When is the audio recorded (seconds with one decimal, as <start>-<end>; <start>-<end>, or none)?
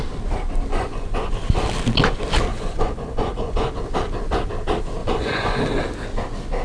0.0-0.7; 1.3-2.5; 3.8-5.0; 5.6-6.6